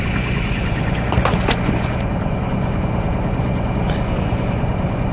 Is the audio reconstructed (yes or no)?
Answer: yes